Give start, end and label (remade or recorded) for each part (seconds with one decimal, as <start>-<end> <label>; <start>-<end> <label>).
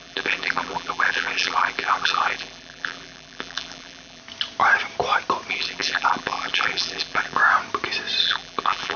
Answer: 0.0-4.2 remade; 4.2-5.5 recorded; 5.5-7.4 remade; 7.4-8.2 recorded; 8.2-9.0 remade